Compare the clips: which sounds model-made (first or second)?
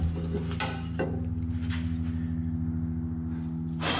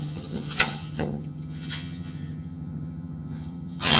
second